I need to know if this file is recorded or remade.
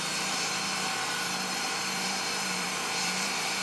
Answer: remade